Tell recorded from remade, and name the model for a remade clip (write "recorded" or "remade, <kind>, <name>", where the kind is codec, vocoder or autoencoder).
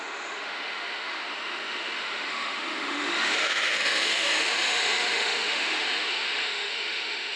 remade, autoencoder, DAC-VAE